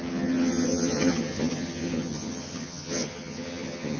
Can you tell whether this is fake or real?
fake